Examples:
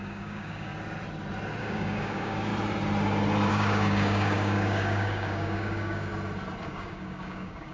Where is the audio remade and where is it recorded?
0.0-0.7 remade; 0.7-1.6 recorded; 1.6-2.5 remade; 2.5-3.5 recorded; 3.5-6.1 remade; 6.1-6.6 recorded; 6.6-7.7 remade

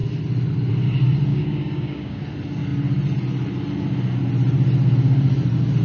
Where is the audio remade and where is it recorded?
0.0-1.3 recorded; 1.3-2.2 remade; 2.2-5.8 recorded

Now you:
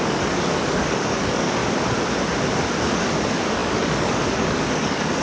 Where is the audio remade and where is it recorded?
0.0-1.6 remade; 1.6-2.8 recorded; 2.8-5.2 remade

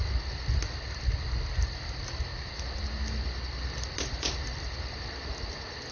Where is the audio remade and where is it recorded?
0.0-5.9 recorded

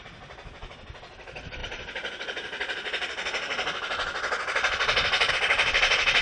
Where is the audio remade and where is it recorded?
0.0-6.2 recorded